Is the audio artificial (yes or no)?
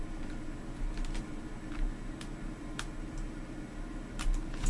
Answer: no